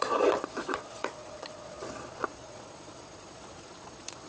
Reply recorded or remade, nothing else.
remade